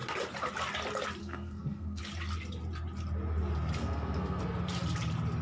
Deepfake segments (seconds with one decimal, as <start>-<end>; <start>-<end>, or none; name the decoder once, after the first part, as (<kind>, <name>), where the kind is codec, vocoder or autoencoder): 1.2-2.0 (codec, SNAC); 3.8-4.4